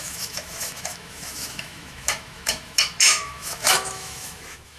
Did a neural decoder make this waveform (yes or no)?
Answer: yes